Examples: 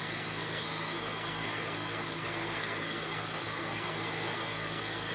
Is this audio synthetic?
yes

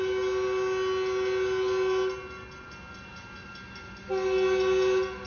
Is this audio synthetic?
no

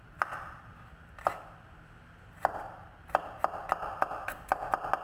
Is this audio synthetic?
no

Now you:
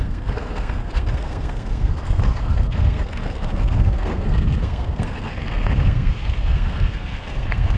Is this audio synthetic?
yes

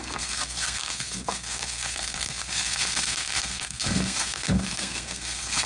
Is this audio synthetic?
yes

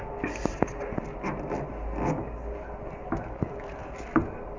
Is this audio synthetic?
no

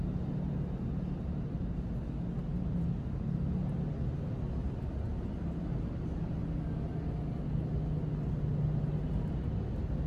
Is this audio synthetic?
no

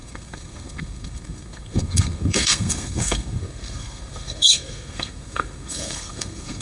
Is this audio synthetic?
yes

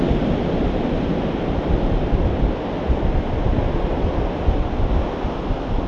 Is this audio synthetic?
no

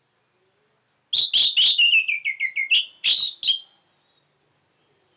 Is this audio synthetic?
no